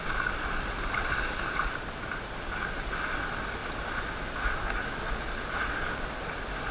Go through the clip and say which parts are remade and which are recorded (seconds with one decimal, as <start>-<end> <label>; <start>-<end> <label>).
0.0-6.7 recorded